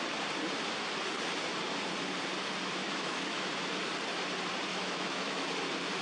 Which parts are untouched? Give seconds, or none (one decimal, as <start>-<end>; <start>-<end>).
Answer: 0.0-2.8; 3.5-4.7; 5.5-6.0